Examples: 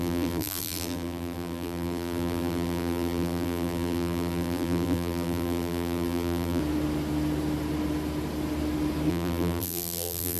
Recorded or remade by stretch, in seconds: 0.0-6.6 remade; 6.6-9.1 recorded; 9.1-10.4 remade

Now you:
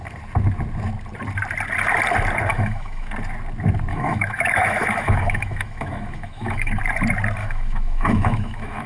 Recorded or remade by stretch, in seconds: 0.0-2.5 recorded; 2.5-3.1 remade; 3.1-3.9 recorded; 3.9-6.8 remade; 6.8-7.4 recorded; 7.4-8.9 remade

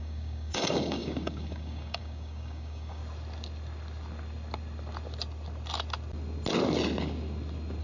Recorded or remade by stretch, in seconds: 0.0-3.0 remade; 3.0-7.8 recorded

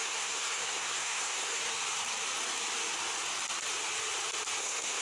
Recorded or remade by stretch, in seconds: 0.0-1.6 remade; 1.6-4.6 recorded; 4.6-5.0 remade

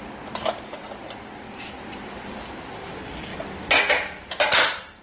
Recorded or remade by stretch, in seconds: 0.0-5.0 recorded

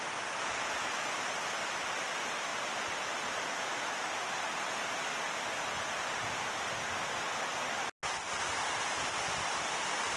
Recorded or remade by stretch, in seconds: 0.0-10.2 recorded

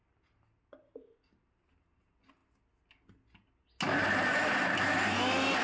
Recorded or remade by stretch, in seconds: 0.0-5.6 recorded